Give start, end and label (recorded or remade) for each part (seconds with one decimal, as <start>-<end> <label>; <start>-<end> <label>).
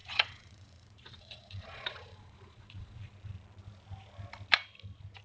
0.0-3.1 remade; 3.1-5.2 recorded